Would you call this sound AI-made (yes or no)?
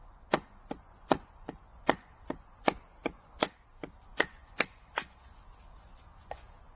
yes